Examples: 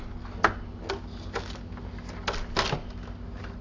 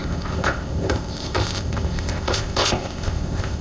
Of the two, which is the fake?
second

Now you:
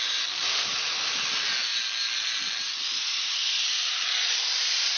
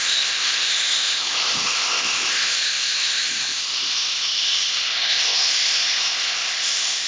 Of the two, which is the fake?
second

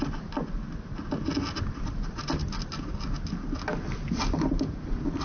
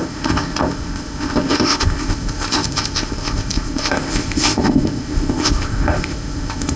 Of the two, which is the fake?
second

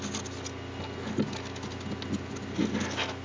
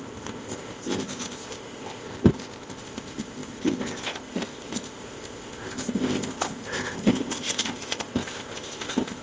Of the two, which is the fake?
second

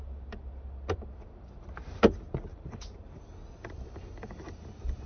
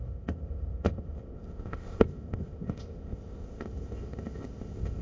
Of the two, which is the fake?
second